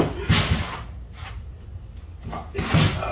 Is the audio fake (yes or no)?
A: no